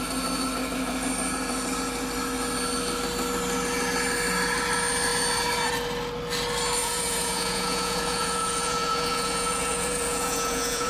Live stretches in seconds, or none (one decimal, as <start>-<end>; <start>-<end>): 0.0-6.8